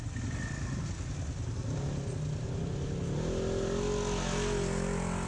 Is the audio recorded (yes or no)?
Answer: yes